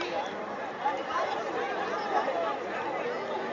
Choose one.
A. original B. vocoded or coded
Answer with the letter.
A